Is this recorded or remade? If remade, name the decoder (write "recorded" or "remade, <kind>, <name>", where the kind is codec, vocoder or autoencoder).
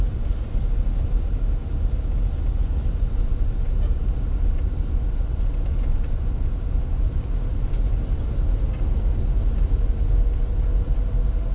recorded